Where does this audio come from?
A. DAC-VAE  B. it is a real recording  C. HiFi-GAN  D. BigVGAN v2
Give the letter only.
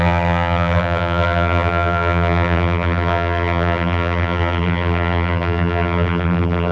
D